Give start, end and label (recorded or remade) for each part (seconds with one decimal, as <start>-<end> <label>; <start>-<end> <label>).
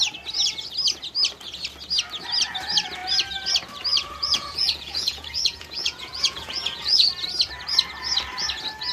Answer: 0.0-3.9 recorded; 3.9-7.1 remade; 7.1-8.9 recorded